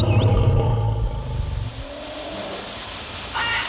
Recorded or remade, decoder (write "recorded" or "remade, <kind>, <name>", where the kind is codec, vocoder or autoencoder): recorded